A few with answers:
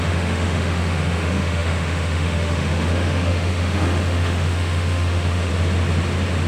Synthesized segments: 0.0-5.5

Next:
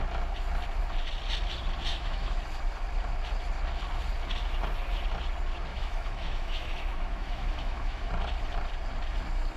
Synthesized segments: 1.9-2.4; 5.7-8.1

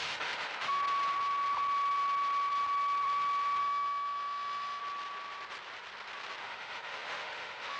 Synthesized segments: 0.0-0.8; 3.6-4.8; 6.4-7.8

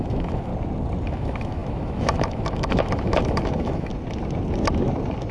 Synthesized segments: 0.0-0.5; 1.1-3.9